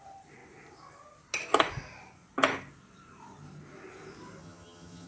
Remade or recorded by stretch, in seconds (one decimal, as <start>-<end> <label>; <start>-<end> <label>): 0.0-4.4 recorded; 4.4-5.1 remade